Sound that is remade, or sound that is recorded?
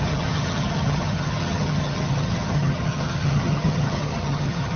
remade